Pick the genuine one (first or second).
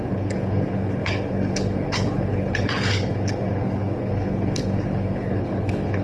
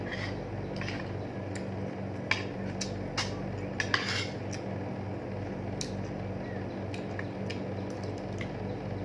second